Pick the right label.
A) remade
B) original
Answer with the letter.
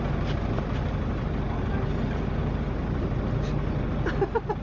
B